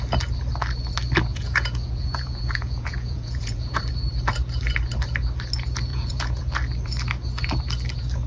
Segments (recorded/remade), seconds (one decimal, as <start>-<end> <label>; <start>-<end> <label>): 0.0-1.3 recorded; 1.3-3.8 remade; 3.8-5.9 recorded; 5.9-6.4 remade; 6.4-8.3 recorded